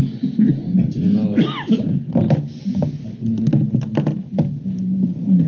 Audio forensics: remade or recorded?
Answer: recorded